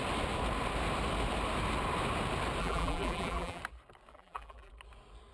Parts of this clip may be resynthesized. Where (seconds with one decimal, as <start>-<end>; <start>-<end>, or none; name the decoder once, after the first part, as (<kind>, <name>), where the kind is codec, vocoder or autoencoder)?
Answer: 2.6-3.6 (vocoder, BigVGAN v2); 4.1-4.7